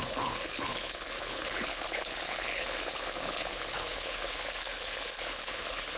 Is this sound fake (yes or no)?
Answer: yes